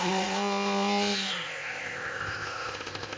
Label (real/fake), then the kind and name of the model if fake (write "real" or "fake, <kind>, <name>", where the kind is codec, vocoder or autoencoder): fake, codec, ZipCodec